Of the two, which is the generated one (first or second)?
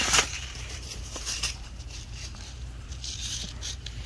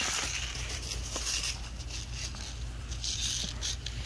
first